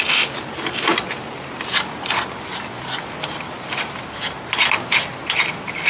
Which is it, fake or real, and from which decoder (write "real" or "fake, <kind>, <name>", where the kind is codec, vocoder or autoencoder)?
fake, vocoder, BigVGAN v2